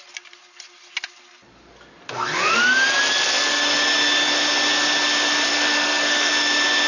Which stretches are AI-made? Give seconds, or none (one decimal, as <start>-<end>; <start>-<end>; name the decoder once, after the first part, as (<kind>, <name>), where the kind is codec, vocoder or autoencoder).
5.5-6.3 (codec, SNAC)